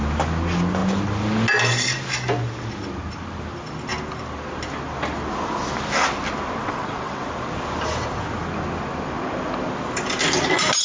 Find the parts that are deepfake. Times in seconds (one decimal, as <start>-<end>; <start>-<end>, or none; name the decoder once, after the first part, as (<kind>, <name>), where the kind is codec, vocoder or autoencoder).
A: 6.6-7.2 (vocoder, WaveNeXt)